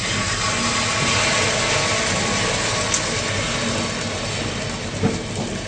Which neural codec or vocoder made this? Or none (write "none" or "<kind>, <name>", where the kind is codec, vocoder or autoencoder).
none